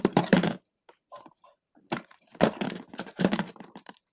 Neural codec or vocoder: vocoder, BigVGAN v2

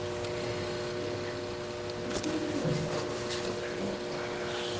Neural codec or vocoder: none